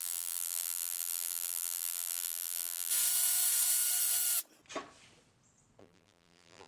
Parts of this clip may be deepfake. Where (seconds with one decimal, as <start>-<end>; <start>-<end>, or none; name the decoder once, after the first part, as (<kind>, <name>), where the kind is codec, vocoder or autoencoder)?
0.0-2.9 (vocoder, BigVGAN v2); 5.8-6.7